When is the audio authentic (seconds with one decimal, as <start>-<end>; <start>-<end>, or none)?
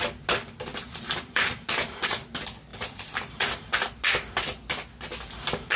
0.0-0.7; 1.4-2.7; 4.0-5.8